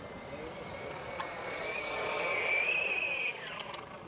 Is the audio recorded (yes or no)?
yes